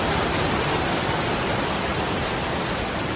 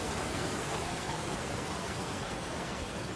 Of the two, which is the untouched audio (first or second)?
first